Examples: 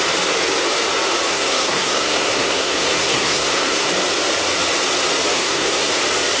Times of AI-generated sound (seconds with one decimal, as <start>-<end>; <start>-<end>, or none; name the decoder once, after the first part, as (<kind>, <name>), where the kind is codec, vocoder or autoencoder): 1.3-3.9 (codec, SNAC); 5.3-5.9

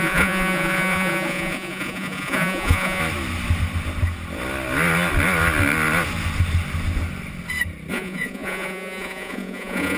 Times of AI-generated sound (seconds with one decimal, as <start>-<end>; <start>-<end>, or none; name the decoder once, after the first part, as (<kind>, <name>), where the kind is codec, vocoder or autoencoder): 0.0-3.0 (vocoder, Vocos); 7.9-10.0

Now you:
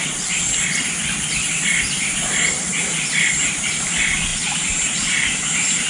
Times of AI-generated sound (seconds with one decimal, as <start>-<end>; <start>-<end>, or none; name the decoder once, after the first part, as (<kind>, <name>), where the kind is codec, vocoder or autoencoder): 4.3-5.0 (vocoder, BigVGAN v2)

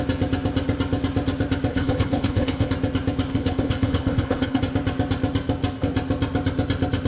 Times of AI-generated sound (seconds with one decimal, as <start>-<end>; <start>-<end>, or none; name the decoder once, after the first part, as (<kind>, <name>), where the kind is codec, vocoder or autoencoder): 1.7-2.7 (codec, HILCodec); 3.3-4.6

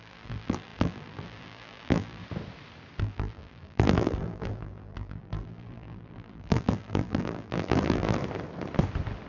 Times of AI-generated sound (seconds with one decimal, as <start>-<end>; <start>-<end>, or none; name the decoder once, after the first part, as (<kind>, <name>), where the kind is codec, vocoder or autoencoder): 0.0-2.2 (vocoder, BigVGAN v2); 3.0-8.2

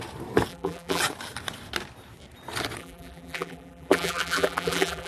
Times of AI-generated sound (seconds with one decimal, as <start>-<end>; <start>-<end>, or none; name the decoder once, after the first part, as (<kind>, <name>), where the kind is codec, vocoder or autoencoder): 0.5-1.0 (vocoder, BigVGAN v2); 2.8-5.1

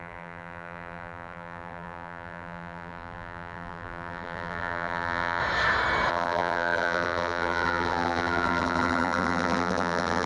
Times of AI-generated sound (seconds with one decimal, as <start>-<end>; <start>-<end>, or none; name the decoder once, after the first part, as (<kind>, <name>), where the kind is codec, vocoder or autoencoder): 0.0-5.4 (vocoder, BigVGAN v2); 6.1-10.3